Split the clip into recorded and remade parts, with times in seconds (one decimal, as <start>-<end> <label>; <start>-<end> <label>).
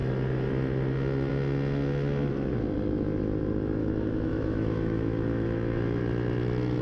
0.0-3.8 recorded; 3.8-6.0 remade; 6.0-6.8 recorded